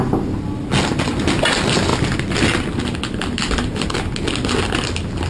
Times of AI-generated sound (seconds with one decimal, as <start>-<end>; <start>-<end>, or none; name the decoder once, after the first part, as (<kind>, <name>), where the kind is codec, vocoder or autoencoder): none